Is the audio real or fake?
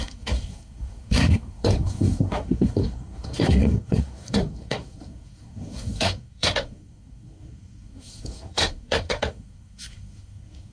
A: fake